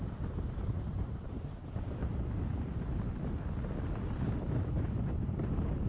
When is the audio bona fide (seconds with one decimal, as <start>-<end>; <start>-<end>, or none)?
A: 2.0-4.4

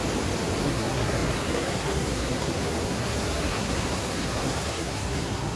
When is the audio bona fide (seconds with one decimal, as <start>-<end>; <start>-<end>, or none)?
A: 0.0-0.6

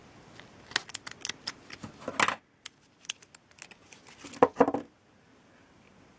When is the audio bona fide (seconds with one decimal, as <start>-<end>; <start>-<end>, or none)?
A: 0.0-6.2

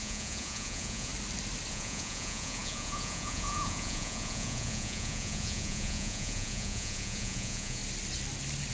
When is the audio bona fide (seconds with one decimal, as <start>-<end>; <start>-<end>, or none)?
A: 1.1-1.7; 7.8-8.7